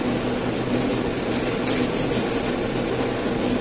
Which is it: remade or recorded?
recorded